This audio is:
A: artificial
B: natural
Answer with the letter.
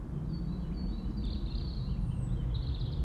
B